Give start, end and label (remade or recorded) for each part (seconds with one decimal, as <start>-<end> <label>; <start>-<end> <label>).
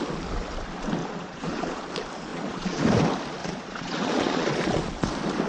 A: 0.0-1.0 recorded; 1.0-1.8 remade; 1.8-2.3 recorded; 2.3-2.8 remade; 2.8-3.4 recorded; 3.4-4.9 remade; 4.9-5.5 recorded